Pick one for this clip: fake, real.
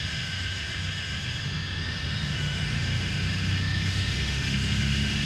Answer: fake